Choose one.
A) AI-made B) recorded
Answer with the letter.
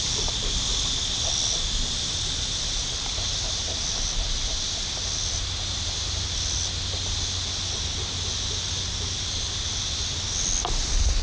B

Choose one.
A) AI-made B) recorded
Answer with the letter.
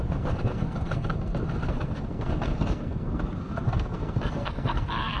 A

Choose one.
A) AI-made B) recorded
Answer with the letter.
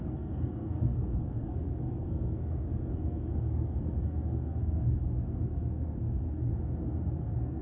A